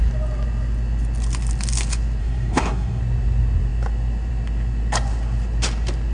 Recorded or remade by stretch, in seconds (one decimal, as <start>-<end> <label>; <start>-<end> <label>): 0.0-2.2 recorded; 2.2-3.0 remade; 3.0-6.1 recorded